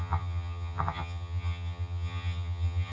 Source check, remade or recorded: remade